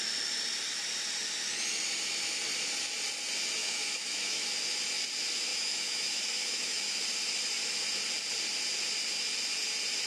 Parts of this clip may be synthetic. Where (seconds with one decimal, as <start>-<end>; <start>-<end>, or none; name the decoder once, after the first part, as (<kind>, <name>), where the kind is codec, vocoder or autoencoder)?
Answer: 3.6-4.5 (autoencoder, DAC-VAE); 5.5-7.0